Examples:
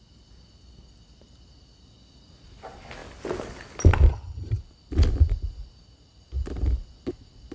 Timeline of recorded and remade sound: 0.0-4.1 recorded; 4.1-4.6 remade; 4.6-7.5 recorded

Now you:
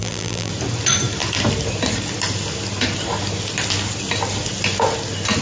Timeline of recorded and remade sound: 0.0-0.5 remade; 0.5-5.4 recorded